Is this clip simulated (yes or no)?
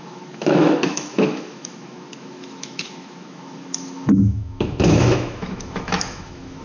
yes